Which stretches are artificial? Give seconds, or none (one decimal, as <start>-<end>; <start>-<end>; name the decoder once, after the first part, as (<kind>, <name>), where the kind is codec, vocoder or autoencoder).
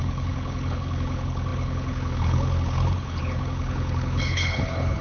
0.0-5.0 (codec, HILCodec)